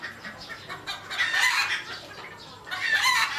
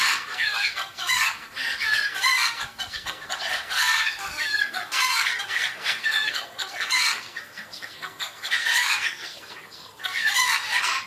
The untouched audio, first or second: first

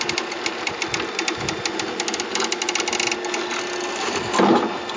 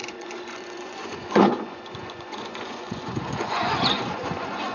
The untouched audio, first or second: first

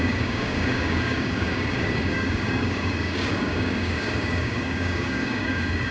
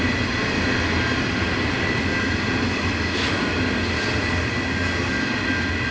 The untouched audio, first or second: second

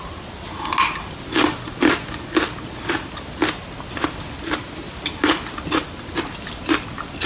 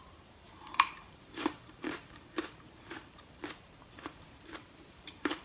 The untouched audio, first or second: first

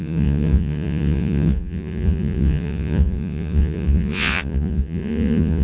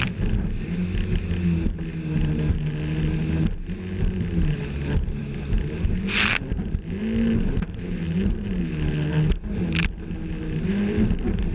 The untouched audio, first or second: second